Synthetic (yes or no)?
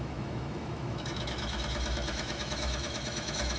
yes